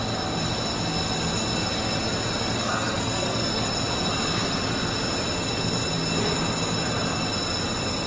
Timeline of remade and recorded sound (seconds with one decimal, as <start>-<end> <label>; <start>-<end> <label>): 0.0-2.6 recorded; 2.6-3.6 remade; 3.6-8.1 recorded